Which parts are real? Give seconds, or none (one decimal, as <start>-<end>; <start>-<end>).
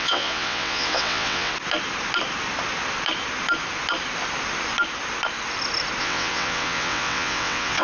1.5-6.0